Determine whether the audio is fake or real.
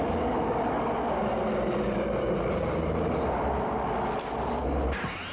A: real